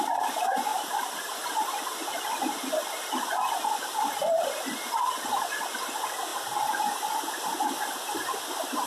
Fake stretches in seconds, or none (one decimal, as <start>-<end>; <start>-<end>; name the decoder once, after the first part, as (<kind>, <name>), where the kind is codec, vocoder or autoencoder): 0.7-1.3 (vocoder, BigVGAN v2)